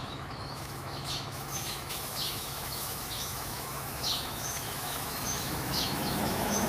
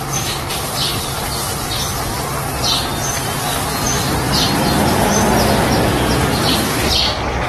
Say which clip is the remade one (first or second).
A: first